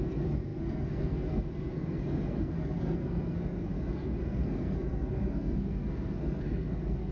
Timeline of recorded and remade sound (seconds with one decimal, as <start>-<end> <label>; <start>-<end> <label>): 0.0-7.1 remade